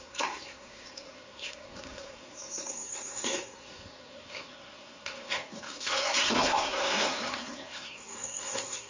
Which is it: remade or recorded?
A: remade